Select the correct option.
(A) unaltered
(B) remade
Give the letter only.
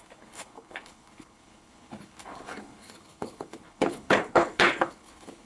B